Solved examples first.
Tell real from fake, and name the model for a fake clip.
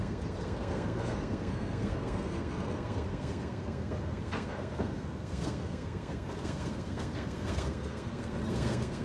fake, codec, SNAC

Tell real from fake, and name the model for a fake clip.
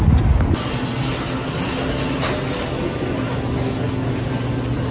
real